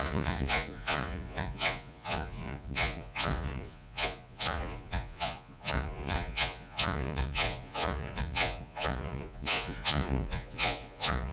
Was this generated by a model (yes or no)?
yes